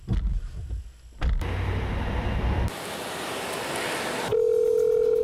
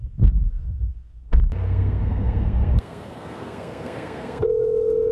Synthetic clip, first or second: second